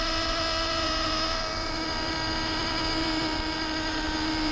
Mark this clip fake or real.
fake